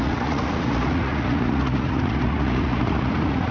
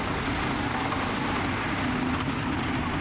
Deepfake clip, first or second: first